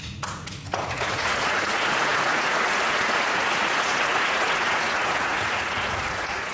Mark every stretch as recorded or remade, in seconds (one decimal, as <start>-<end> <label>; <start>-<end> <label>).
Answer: 0.0-6.5 remade